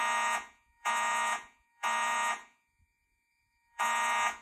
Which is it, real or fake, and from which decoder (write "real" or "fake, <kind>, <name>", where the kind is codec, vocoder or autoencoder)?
fake, vocoder, Vocos